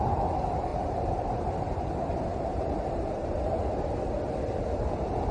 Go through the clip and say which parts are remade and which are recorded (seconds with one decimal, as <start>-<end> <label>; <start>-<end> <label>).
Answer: 0.0-0.7 recorded; 0.7-1.5 remade; 1.5-2.3 recorded; 2.3-4.0 remade; 4.0-5.3 recorded